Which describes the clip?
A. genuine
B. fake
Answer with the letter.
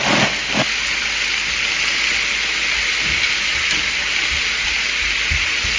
A